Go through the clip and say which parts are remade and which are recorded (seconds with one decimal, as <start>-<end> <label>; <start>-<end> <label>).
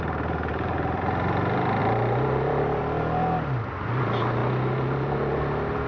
0.0-0.5 recorded; 0.5-1.0 remade; 1.0-1.8 recorded; 1.8-2.8 remade; 2.8-5.9 recorded